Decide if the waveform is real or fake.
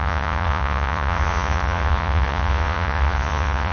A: fake